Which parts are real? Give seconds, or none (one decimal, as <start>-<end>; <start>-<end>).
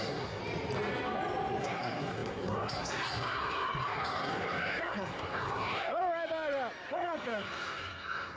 0.4-1.6; 6.0-6.9